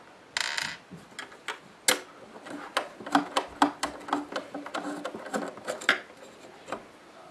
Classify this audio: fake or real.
real